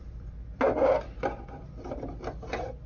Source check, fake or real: real